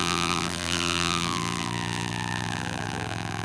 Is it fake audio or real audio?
fake